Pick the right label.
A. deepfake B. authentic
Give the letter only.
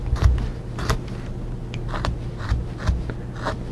B